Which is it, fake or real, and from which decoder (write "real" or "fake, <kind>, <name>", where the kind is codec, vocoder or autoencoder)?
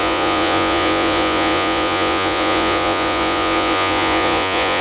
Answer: fake, vocoder, Vocos